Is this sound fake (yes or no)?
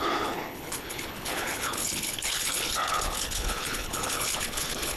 yes